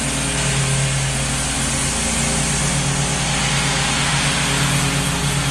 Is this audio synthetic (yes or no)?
no